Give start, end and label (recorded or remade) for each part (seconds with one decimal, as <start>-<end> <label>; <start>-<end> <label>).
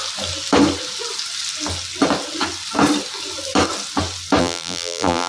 0.0-4.4 recorded; 4.4-5.3 remade